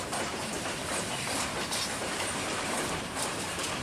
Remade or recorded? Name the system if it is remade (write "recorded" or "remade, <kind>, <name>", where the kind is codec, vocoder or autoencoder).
remade, vocoder, BigVGAN v2